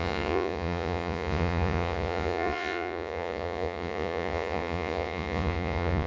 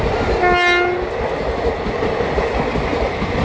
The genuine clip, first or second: second